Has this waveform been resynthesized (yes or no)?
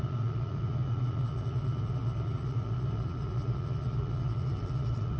yes